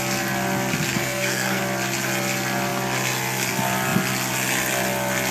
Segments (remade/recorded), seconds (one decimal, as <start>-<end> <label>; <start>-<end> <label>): 0.0-0.9 recorded; 0.9-1.6 remade; 1.6-5.3 recorded